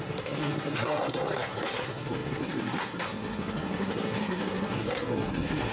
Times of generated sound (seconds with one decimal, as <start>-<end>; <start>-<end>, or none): 0.0-5.7